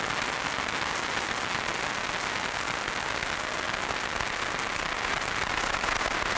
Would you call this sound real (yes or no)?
yes